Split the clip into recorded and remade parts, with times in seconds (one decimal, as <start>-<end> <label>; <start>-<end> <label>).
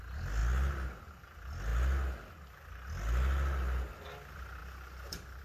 0.0-4.6 recorded; 4.6-5.4 remade